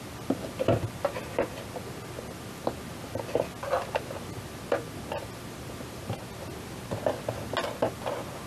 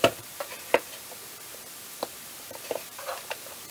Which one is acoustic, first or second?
first